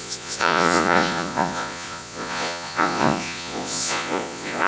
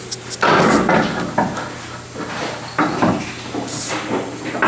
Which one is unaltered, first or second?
second